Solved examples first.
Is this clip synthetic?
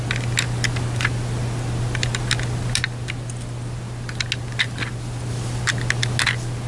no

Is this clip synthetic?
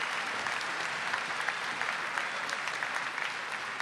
no